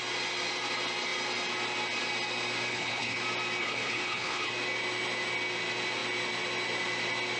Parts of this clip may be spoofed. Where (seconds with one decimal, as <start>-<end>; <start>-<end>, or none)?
2.7-3.2; 3.6-4.5